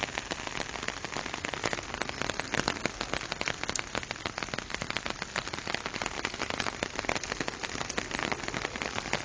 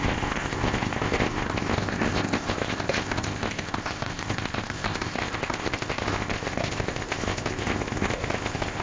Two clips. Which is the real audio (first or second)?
first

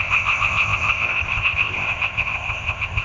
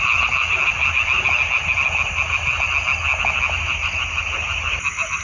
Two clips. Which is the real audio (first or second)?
second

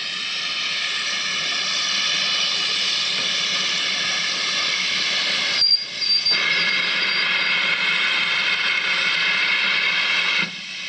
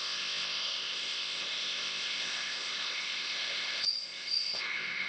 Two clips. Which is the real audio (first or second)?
first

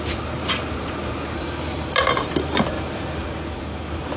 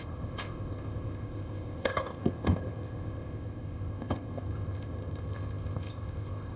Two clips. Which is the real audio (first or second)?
first